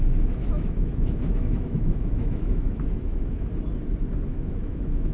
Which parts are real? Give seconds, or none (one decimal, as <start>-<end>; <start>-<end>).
0.0-0.4; 3.5-4.3